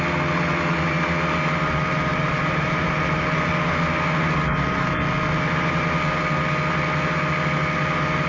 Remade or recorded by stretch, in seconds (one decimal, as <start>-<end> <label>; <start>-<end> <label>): 0.0-2.1 recorded; 2.1-3.5 remade; 3.5-8.3 recorded